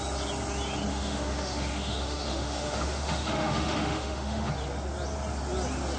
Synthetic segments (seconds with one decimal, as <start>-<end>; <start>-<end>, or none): 0.9-4.5